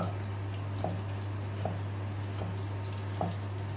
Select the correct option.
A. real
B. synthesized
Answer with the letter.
A